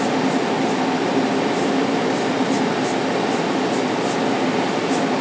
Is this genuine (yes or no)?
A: yes